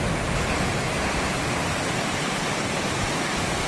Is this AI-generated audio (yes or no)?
no